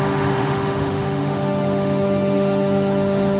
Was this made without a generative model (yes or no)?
no